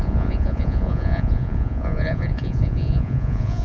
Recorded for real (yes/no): no